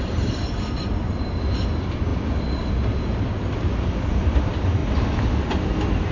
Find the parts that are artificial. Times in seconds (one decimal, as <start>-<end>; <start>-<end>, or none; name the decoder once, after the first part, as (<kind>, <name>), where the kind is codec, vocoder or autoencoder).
0.0-2.1 (vocoder, BigVGAN v2); 4.2-4.8